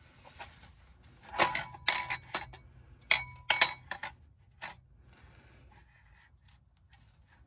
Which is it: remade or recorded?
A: recorded